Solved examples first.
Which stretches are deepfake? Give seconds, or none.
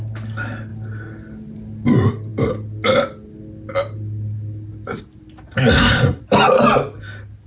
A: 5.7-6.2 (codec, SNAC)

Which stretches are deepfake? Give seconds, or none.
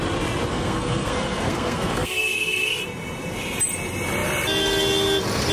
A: 0.5-2.8 (codec, SNAC)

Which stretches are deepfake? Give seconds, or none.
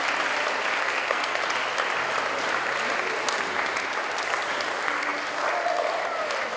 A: 0.8-1.4 (codec, SNAC)